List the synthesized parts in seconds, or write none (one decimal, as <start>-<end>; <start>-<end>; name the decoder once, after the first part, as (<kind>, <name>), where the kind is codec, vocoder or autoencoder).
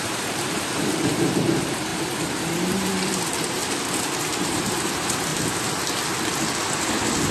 0.0-3.6 (vocoder, BigVGAN v2); 4.3-5.3